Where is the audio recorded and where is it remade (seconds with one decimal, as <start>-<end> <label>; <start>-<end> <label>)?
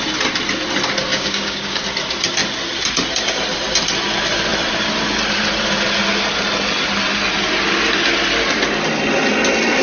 0.0-1.1 recorded; 1.1-1.8 remade; 1.8-9.8 recorded